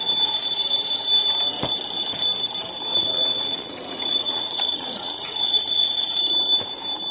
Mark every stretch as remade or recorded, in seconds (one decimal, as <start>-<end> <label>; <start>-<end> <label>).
0.0-2.9 recorded; 2.9-6.2 remade; 6.2-7.1 recorded